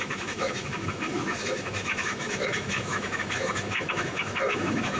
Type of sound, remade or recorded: remade